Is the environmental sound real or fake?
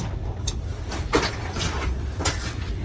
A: real